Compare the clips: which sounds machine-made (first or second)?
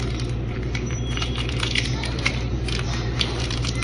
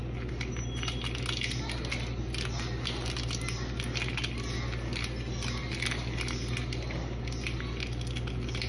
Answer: first